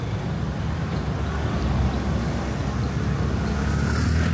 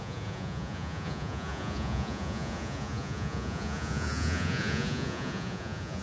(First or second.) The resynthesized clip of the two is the second